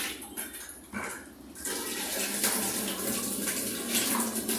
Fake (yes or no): no